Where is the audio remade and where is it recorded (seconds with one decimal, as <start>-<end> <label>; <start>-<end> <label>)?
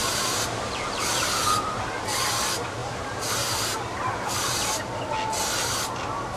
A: 0.0-1.1 remade; 1.1-2.8 recorded; 2.8-5.0 remade; 5.0-6.4 recorded